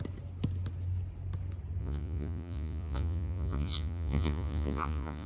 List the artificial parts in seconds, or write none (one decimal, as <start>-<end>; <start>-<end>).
1.8-5.3